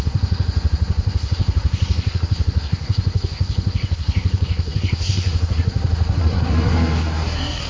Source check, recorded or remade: remade